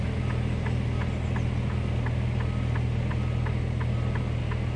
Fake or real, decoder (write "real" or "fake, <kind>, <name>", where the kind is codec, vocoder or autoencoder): real